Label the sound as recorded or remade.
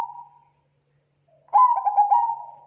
recorded